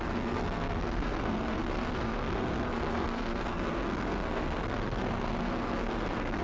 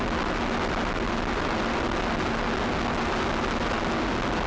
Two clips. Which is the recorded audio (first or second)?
second